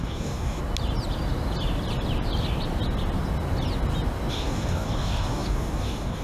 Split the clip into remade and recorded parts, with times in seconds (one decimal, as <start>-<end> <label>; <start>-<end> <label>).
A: 0.0-0.6 remade; 0.6-4.3 recorded; 4.3-6.2 remade